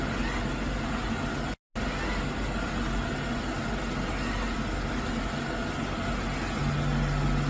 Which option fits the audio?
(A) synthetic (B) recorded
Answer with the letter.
B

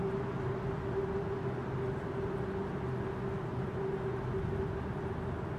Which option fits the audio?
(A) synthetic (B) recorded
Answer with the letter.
B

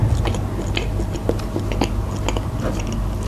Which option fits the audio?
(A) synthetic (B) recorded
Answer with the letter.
B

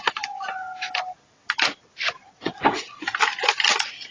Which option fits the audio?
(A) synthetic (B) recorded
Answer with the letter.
B